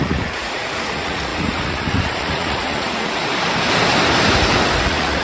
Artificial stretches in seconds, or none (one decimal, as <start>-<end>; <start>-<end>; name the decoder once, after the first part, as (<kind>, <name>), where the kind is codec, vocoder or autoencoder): 0.0-3.2 (vocoder, Vocos); 4.8-5.2